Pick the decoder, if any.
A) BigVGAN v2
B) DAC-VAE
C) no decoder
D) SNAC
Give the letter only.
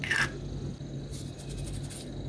C